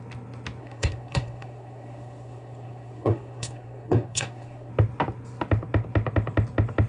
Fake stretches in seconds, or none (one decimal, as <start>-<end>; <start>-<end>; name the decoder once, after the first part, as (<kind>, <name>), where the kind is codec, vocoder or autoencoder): 0.6-4.7 (codec, SNAC)